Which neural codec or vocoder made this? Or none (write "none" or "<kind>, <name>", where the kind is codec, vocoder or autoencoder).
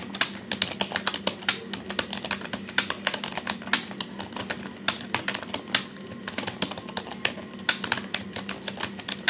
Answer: none